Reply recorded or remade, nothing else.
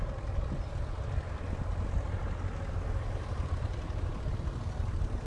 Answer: recorded